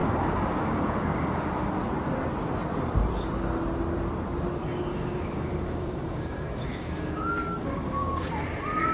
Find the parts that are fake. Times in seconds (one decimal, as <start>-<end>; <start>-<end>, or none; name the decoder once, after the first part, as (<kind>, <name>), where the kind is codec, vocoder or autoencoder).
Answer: 0.0-1.7 (codec, DAC); 4.9-8.2